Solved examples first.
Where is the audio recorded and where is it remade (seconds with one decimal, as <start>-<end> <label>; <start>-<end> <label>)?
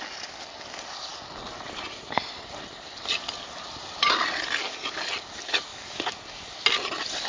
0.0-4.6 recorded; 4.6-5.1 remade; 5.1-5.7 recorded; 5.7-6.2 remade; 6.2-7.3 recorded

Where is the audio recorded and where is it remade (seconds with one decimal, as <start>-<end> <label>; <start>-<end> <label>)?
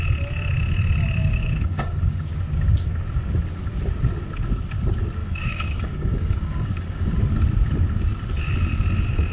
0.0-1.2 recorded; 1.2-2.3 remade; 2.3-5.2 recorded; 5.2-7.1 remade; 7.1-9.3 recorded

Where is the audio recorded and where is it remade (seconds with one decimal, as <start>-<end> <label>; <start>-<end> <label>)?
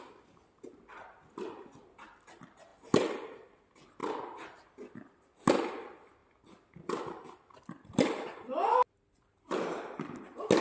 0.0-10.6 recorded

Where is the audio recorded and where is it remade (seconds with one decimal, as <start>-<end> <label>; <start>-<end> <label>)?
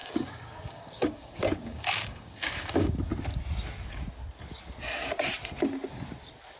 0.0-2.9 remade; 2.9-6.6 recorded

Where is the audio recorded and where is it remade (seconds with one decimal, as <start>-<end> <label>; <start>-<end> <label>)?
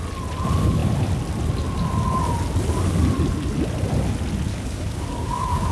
0.0-4.5 recorded; 4.5-5.7 remade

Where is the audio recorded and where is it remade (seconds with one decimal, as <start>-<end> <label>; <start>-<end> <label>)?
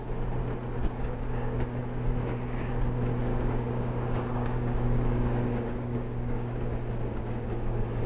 0.0-0.8 recorded; 0.8-1.8 remade; 1.8-2.2 recorded; 2.2-2.7 remade; 2.7-3.3 recorded; 3.3-6.6 remade; 6.6-7.1 recorded; 7.1-8.1 remade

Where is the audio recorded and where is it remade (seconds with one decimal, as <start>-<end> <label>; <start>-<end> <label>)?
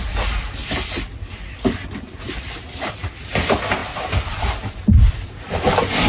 0.0-6.1 recorded